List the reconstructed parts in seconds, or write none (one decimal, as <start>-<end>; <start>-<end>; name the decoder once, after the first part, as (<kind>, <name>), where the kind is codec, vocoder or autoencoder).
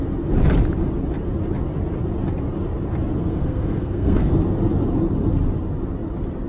3.2-4.3 (codec, SNAC)